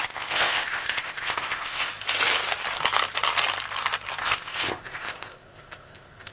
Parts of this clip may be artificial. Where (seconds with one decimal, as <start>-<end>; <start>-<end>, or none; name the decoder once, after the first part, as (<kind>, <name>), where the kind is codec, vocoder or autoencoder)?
0.0-1.9 (codec, ZipCodec); 4.2-6.3